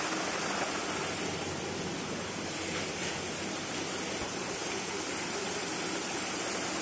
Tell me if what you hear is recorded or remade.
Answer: recorded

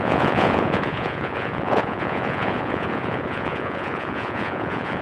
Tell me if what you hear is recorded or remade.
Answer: remade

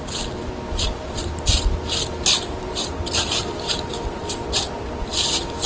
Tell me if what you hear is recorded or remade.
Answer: recorded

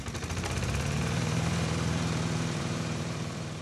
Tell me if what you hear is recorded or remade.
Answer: remade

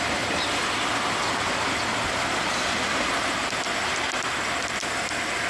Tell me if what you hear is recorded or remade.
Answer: recorded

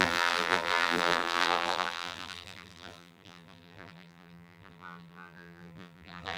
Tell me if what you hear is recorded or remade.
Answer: remade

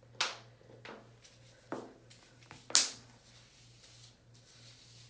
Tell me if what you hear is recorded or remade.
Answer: recorded